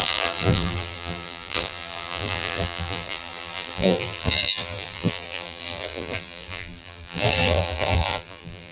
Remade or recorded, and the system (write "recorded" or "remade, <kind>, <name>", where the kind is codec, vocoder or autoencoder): remade, vocoder, BigVGAN v2